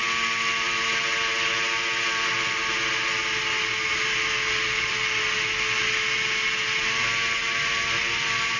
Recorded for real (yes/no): yes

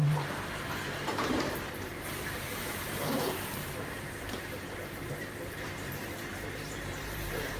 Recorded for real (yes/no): no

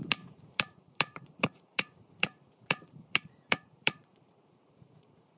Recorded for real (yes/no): no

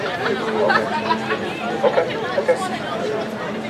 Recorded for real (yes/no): yes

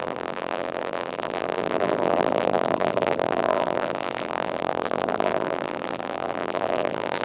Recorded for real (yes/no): no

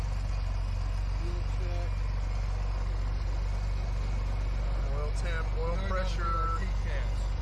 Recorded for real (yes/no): yes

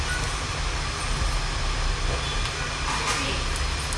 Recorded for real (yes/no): yes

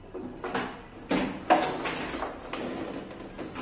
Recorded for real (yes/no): yes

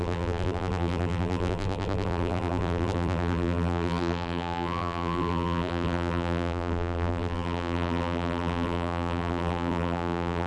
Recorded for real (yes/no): no